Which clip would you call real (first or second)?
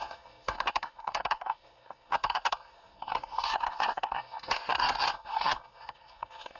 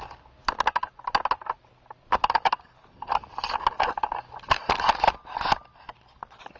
second